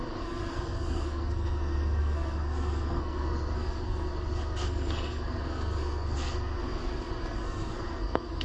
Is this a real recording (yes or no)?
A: no